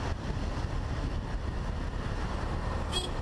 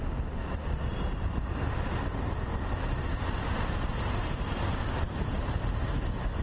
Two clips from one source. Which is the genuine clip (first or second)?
first